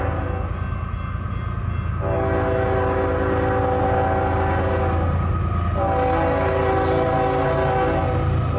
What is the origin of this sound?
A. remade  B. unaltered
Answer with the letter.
B